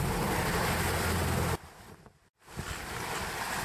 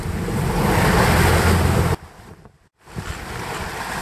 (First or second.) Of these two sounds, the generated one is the second